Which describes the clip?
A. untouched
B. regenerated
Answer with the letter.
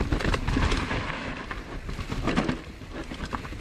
A